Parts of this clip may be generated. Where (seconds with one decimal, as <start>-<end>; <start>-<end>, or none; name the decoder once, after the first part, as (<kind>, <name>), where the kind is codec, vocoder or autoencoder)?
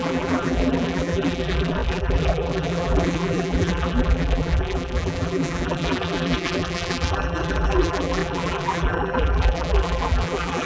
0.0-10.7 (vocoder, BigVGAN v2)